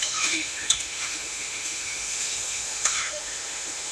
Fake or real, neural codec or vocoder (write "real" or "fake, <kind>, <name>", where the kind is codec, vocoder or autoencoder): fake, autoencoder, DAC-VAE